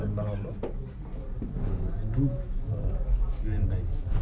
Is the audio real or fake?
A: real